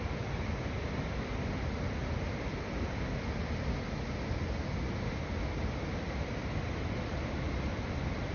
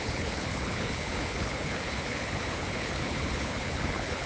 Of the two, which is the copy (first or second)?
second